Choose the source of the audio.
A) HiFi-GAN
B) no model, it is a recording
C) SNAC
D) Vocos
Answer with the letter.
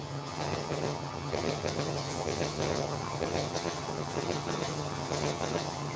A